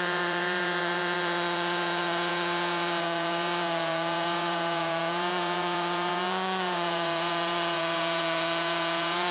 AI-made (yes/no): yes